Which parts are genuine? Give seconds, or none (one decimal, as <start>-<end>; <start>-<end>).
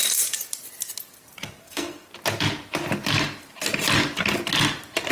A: 0.0-1.6; 2.1-5.1